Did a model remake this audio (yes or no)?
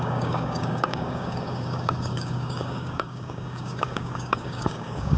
yes